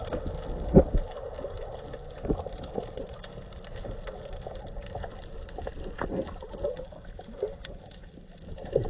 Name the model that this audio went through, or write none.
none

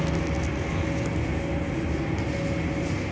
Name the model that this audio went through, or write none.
none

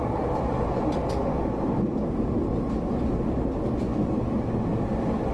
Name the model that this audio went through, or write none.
none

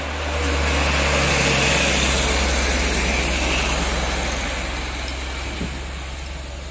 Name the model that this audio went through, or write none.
none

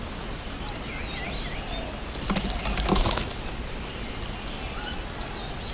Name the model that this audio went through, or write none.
none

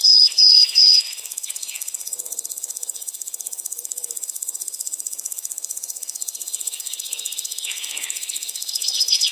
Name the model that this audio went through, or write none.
codec, SNAC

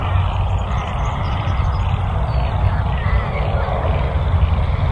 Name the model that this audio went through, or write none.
none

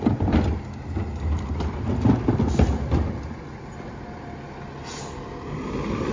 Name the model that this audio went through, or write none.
none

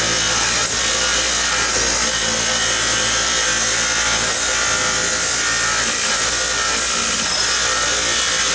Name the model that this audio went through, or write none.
none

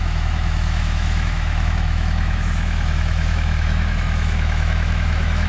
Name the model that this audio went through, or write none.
autoencoder, DAC-VAE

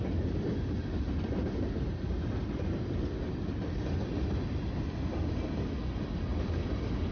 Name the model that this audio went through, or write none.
none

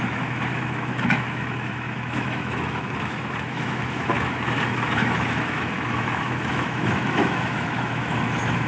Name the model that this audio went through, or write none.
autoencoder, DAC-VAE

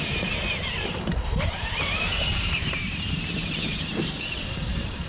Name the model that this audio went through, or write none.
vocoder, BigVGAN v2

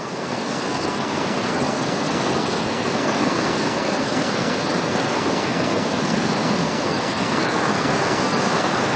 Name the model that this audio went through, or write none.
codec, SNAC